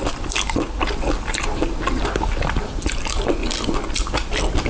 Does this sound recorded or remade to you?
recorded